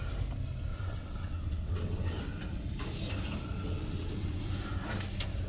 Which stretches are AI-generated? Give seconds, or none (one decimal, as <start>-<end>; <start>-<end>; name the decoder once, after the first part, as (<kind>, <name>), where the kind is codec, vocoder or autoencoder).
0.7-2.2 (vocoder, WaveNeXt); 3.7-4.4